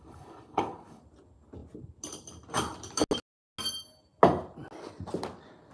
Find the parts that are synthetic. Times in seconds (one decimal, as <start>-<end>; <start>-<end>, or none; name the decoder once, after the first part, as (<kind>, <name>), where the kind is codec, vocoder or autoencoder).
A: 0.0-1.0 (codec, HILCodec)